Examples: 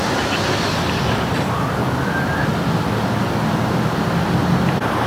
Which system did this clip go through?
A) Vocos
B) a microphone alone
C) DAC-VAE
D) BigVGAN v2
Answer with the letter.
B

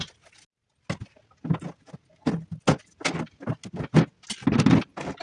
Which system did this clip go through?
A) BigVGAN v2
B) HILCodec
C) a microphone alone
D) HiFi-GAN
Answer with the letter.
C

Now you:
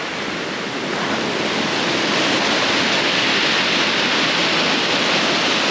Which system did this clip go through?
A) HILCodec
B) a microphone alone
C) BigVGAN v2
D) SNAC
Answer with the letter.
B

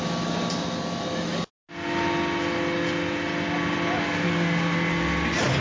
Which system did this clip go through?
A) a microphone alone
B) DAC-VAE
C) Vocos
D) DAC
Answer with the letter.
A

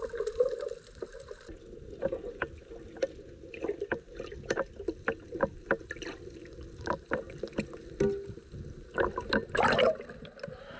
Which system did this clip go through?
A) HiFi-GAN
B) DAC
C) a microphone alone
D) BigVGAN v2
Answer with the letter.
C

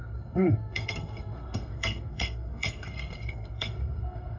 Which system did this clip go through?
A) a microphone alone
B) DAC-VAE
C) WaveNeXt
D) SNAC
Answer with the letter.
D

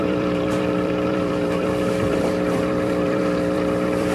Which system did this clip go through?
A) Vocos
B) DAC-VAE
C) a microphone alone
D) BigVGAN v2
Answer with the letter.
D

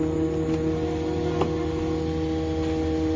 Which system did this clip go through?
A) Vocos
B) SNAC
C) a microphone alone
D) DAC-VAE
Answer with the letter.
C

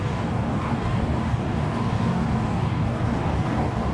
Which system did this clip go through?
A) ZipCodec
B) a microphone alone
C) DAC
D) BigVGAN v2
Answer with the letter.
C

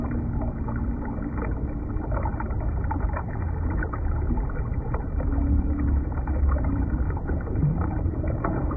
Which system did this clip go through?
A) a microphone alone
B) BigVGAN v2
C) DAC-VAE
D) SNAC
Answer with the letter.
B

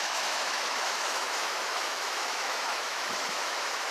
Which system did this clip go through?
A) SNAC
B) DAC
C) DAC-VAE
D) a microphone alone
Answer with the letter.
C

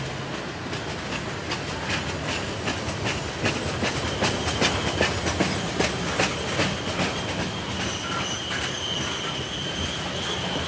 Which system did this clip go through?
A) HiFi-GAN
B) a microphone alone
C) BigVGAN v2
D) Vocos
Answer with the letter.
B